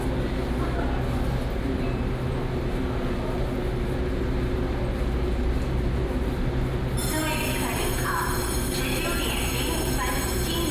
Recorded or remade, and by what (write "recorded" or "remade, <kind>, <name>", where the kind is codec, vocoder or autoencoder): recorded